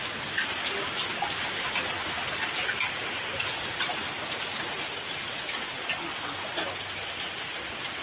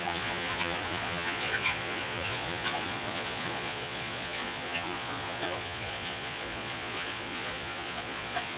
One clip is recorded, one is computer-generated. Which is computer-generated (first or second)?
second